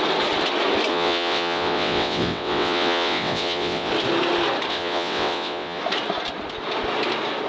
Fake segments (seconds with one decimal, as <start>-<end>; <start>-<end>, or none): 0.9-3.9; 4.7-5.8